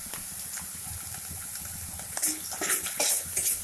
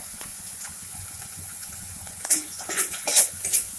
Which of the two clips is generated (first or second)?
second